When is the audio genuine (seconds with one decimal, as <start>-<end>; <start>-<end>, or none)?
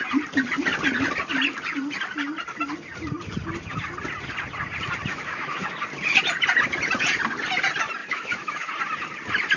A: 0.0-5.1; 5.7-8.0; 8.7-9.6